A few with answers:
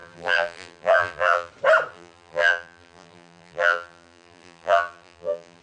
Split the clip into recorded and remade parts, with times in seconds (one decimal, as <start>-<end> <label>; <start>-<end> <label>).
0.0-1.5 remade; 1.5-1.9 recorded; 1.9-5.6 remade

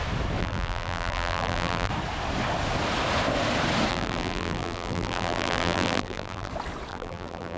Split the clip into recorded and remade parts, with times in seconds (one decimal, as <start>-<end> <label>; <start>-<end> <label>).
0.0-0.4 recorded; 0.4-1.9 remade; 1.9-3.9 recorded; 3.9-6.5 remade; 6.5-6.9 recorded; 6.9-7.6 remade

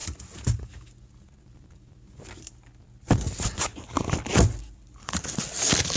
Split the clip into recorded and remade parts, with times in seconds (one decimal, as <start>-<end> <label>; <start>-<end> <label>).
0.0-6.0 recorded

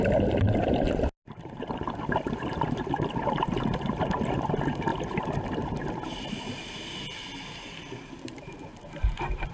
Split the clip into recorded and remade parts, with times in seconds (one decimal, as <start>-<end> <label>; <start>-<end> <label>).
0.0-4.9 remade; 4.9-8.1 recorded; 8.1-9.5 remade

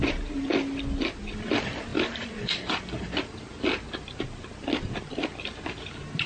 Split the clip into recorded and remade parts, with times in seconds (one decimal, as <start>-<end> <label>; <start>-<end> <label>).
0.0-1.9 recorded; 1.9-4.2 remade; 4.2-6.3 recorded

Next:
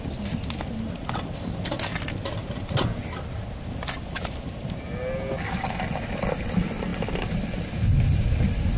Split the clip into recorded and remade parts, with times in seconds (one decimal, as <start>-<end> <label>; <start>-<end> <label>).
0.0-8.8 recorded